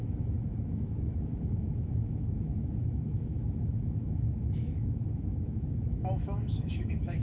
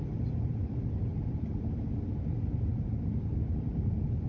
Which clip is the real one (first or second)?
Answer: second